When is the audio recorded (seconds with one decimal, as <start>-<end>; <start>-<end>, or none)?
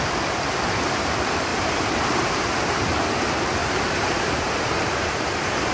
0.0-1.5; 2.8-3.6